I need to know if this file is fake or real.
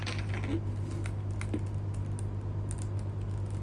real